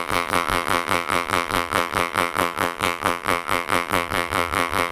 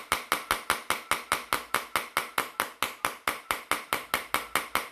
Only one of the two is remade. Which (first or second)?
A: first